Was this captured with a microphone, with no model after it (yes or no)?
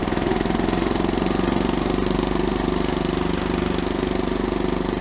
yes